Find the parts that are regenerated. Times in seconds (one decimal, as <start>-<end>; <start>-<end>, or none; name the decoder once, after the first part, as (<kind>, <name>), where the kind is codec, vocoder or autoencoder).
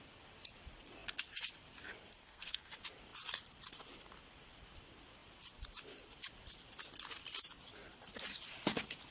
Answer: 2.2-2.7 (codec, SNAC)